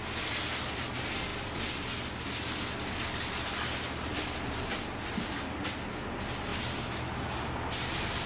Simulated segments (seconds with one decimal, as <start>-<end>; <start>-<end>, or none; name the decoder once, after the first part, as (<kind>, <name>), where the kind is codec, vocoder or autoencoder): none